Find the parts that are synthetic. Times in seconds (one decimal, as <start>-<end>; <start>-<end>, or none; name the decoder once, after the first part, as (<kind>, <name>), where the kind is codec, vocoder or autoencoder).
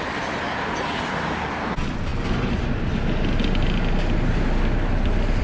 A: none